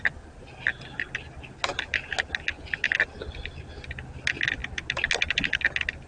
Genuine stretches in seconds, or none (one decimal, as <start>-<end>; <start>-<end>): 0.0-6.1